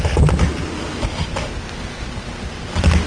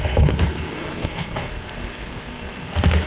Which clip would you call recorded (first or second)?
first